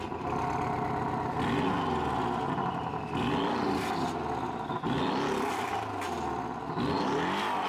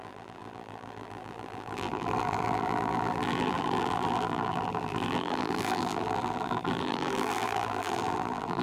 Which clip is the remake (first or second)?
second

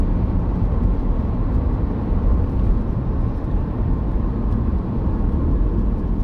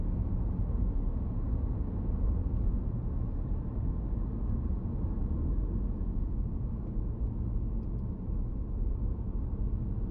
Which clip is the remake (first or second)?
first